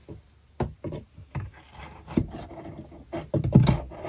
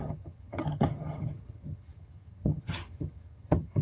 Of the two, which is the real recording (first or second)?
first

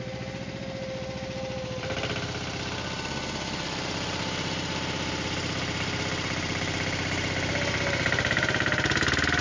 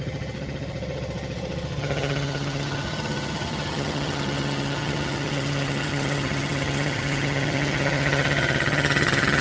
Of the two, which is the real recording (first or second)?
first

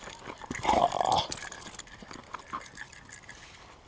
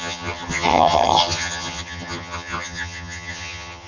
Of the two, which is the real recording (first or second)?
first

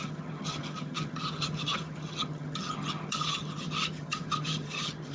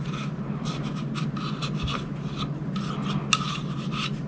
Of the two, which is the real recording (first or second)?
second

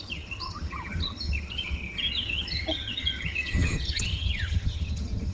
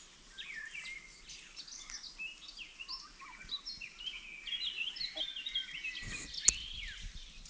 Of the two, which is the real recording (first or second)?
second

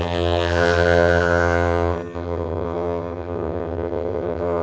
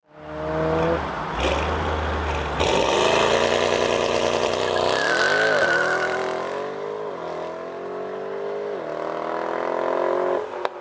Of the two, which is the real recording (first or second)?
second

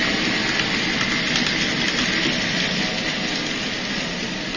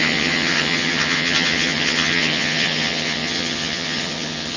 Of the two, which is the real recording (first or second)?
first